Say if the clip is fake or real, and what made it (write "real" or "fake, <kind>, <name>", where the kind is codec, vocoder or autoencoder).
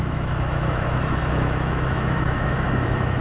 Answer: fake, autoencoder, DAC-VAE